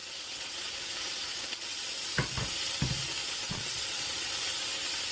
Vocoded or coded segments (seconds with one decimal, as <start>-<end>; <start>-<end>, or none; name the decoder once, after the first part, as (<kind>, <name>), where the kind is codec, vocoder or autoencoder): 0.0-0.7 (vocoder, Vocos); 1.3-2.1; 3.2-4.3